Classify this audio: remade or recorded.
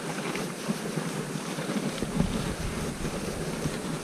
recorded